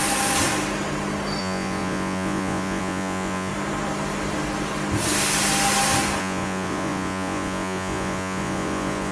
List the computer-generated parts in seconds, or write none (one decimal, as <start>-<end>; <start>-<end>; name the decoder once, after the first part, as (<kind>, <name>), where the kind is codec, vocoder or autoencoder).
1.4-3.5 (vocoder, Vocos); 6.2-9.1

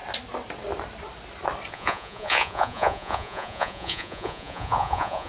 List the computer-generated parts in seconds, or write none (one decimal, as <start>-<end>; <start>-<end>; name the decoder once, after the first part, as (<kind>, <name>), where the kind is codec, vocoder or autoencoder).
1.7-5.3 (vocoder, Vocos)

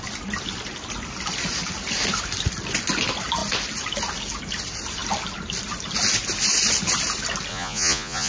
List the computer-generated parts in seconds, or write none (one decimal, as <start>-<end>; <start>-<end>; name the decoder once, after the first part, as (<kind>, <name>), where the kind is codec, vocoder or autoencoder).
7.5-8.3 (vocoder, Vocos)

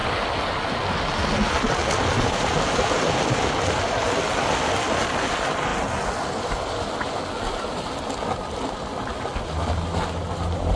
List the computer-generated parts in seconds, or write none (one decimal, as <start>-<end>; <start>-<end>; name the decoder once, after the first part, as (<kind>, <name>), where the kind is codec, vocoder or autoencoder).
none

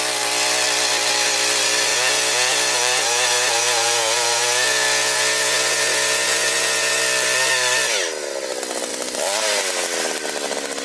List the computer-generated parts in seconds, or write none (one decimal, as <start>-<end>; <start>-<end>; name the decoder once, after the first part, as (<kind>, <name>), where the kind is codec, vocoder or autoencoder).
1.9-7.0 (vocoder, Vocos)